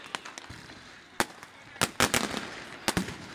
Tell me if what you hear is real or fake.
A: real